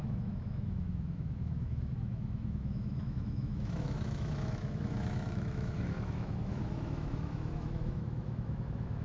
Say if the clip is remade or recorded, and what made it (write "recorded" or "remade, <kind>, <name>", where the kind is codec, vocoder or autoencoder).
remade, autoencoder, DAC-VAE